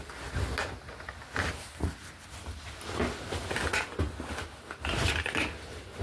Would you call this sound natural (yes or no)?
yes